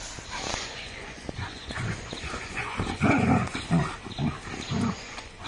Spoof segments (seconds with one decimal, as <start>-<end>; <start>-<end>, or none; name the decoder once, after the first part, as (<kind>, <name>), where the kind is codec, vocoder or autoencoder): 0.5-3.8 (vocoder, Vocos); 4.7-5.5